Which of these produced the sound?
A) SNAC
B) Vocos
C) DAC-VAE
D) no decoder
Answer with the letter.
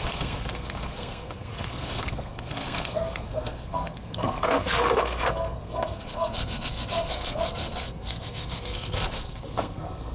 A